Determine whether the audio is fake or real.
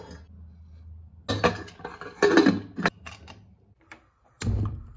real